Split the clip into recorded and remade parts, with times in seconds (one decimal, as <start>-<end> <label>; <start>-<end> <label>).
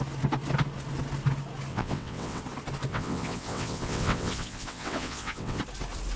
0.0-1.7 recorded; 1.7-2.4 remade; 2.4-2.9 recorded; 2.9-5.6 remade; 5.6-6.2 recorded